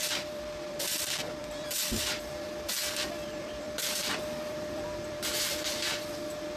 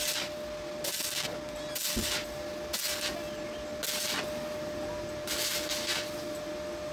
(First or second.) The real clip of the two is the second